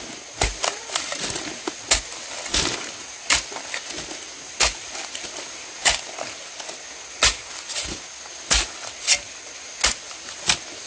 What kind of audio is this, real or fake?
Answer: real